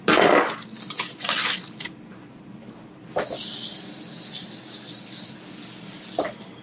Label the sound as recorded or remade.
recorded